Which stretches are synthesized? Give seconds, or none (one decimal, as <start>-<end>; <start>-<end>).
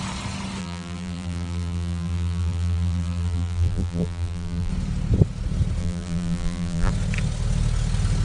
0.6-4.7; 5.8-6.9